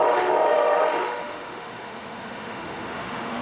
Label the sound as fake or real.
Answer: fake